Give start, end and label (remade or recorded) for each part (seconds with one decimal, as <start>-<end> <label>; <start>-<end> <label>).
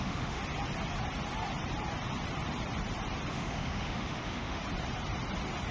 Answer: 0.0-0.4 remade; 0.4-3.3 recorded; 3.3-4.6 remade; 4.6-5.7 recorded